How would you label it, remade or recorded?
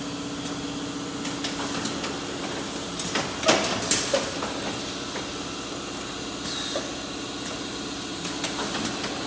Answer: recorded